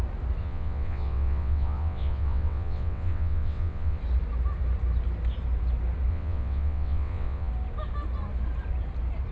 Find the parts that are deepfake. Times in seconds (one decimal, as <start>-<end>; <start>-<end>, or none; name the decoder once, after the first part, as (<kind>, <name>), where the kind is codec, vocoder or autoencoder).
0.4-4.0 (vocoder, WaveNeXt); 6.1-7.5